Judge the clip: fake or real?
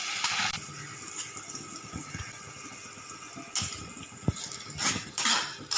real